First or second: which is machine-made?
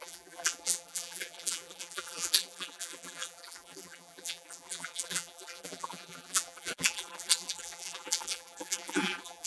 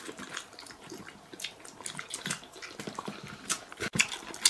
first